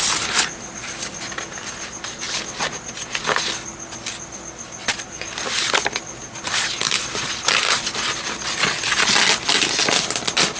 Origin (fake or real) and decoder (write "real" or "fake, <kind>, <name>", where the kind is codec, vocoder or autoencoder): real